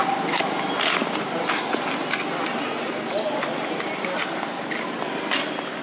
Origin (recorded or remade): recorded